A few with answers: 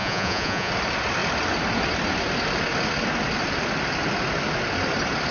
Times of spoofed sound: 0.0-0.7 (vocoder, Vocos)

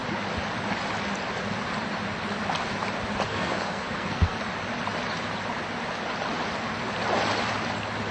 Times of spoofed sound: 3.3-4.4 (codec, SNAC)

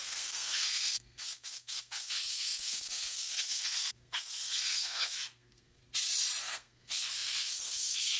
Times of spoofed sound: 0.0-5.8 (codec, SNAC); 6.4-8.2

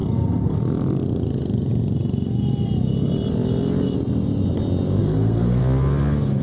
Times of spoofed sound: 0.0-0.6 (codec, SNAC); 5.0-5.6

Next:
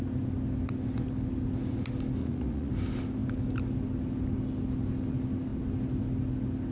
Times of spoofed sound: 2.2-2.7 (vocoder, Vocos)

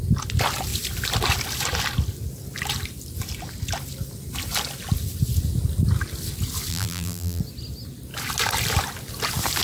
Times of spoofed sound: 6.7-7.4 (vocoder, BigVGAN v2)